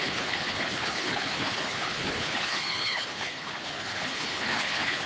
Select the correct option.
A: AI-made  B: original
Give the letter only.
A